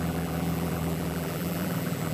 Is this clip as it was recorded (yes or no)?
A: no